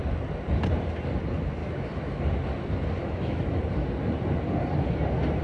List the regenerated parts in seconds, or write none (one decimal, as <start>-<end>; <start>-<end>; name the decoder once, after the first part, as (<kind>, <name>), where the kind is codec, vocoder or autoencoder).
1.6-2.2 (autoencoder, DAC-VAE); 3.0-3.5